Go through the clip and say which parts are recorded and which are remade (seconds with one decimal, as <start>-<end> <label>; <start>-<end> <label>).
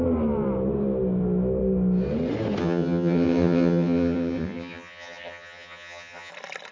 0.0-2.6 recorded; 2.6-6.3 remade; 6.3-6.7 recorded